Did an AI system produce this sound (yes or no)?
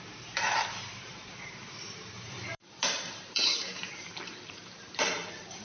yes